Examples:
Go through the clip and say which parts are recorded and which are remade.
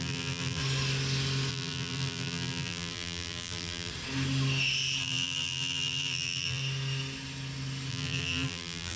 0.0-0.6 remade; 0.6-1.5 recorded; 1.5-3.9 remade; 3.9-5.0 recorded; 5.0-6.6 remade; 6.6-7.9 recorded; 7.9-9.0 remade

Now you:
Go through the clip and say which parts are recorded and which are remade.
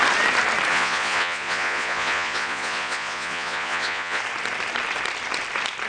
0.0-0.7 recorded; 0.7-4.2 remade; 4.2-5.9 recorded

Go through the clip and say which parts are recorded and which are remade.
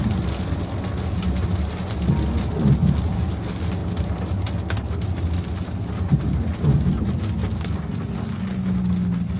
0.0-9.4 recorded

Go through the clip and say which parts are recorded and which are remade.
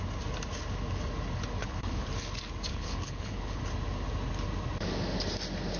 0.0-1.6 recorded; 1.6-2.1 remade; 2.1-2.7 recorded; 2.7-3.6 remade; 3.6-5.8 recorded